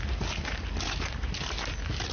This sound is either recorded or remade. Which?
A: recorded